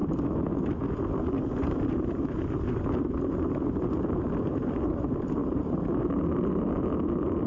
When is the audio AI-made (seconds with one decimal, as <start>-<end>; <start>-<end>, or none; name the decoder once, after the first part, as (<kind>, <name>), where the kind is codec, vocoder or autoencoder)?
1.6-5.0 (vocoder, BigVGAN v2); 5.4-6.5